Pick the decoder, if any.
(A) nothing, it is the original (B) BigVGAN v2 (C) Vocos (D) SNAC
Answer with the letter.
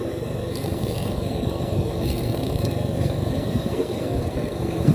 D